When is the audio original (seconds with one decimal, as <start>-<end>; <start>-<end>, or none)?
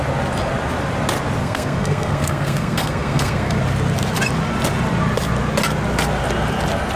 0.0-1.4; 3.6-7.0